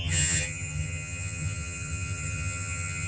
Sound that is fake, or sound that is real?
fake